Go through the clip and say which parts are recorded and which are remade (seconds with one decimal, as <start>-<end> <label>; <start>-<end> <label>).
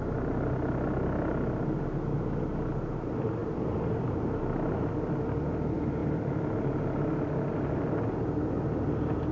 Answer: 0.0-9.3 recorded